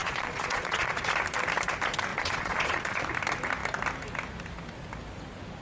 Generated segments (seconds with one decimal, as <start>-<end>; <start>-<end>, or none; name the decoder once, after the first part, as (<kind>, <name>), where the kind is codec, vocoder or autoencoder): 0.0-1.1 (vocoder, Vocos); 2.1-3.0